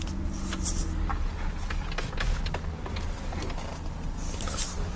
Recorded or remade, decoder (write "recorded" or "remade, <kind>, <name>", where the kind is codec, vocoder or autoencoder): recorded